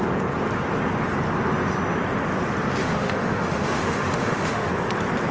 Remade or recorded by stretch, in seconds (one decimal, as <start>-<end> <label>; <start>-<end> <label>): 0.0-2.8 recorded; 2.8-4.7 remade; 4.7-5.3 recorded

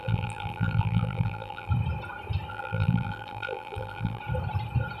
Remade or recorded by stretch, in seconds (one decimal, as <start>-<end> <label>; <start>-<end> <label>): 0.0-1.7 remade; 1.7-2.5 recorded; 2.5-4.2 remade; 4.2-5.0 recorded

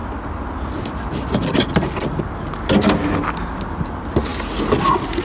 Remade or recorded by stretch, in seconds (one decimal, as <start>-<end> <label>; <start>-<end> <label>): 0.0-5.2 recorded

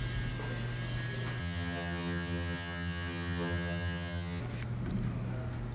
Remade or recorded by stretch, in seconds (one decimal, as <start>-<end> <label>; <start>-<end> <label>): 0.0-1.4 recorded; 1.4-4.4 remade; 4.4-5.7 recorded

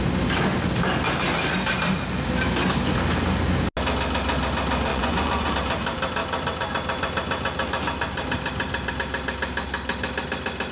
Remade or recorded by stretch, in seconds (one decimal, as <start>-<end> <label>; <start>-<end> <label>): 0.0-4.9 recorded; 4.9-5.5 remade; 5.5-10.7 recorded

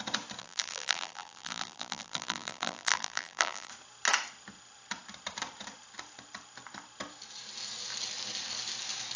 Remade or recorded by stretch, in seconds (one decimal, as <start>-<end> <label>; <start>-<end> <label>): 0.0-0.4 recorded; 0.4-3.7 remade; 3.7-9.2 recorded